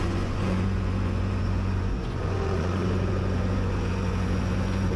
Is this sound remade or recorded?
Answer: remade